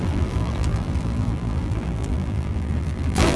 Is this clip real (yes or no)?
no